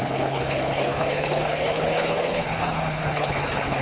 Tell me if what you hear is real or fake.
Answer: fake